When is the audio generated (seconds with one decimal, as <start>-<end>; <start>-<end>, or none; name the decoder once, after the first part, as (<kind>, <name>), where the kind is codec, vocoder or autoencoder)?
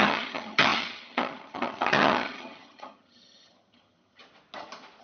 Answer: 0.0-4.2 (vocoder, HiFi-GAN)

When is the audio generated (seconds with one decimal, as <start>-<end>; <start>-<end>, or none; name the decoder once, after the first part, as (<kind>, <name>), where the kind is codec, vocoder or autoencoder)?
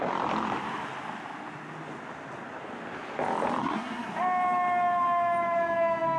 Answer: 3.6-4.1 (codec, SNAC)